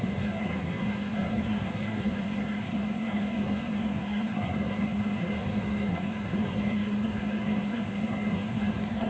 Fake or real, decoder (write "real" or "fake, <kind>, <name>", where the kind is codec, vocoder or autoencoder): fake, codec, SNAC